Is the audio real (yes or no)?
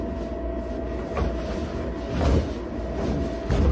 yes